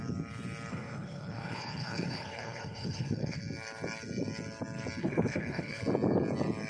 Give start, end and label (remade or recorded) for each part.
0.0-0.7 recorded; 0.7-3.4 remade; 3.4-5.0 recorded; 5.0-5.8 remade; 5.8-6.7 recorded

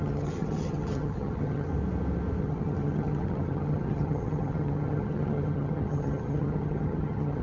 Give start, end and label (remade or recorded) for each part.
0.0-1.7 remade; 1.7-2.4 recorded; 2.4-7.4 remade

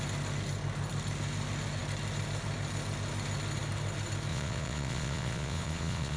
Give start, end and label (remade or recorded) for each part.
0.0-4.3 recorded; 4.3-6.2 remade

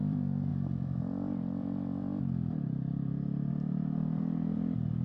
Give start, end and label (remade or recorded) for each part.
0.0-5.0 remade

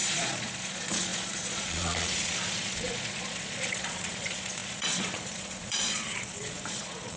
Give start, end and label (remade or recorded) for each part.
0.0-7.2 remade

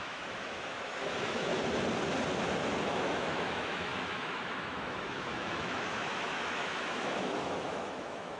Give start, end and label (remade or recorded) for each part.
0.0-1.5 remade; 1.5-2.9 recorded; 2.9-8.4 remade